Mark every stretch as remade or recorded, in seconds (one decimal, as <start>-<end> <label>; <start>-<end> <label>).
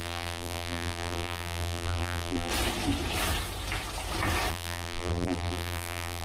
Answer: 0.0-2.5 remade; 2.5-4.5 recorded; 4.5-6.2 remade